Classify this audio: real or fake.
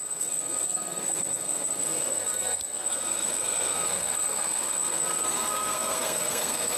fake